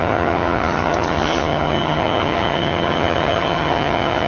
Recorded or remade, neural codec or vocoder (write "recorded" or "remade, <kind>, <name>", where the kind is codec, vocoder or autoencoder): remade, vocoder, HiFi-GAN